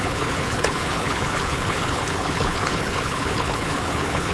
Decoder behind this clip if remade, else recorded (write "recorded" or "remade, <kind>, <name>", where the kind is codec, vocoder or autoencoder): remade, codec, HILCodec